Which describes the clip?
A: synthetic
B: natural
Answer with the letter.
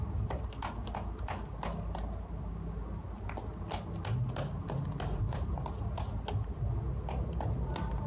B